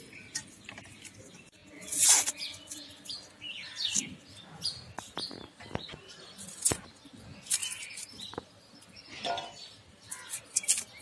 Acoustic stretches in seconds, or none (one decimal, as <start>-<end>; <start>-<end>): 0.0-11.0